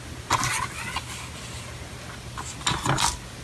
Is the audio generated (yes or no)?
no